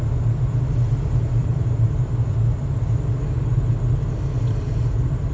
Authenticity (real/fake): real